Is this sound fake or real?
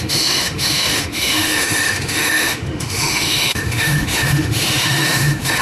fake